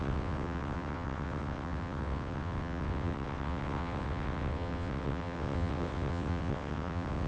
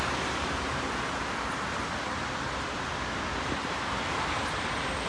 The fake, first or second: first